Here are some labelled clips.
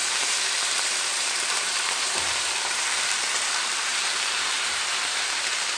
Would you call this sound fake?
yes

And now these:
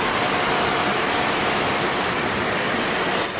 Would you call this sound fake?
yes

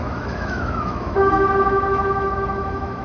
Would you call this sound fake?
yes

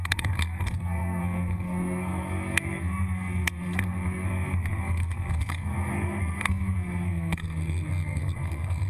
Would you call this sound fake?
yes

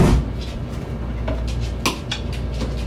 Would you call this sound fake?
no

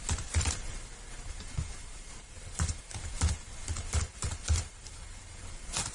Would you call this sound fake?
no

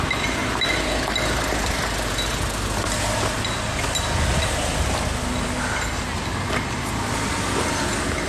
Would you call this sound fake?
no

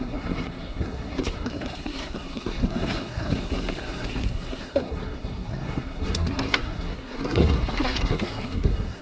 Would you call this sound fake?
yes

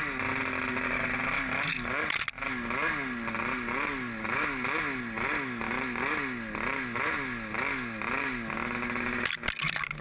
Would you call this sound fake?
no